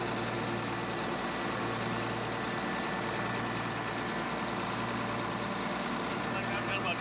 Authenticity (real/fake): real